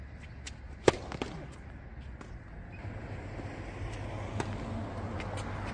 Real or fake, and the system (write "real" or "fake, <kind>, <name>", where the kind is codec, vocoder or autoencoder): real